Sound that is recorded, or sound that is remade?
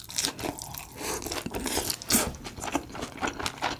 recorded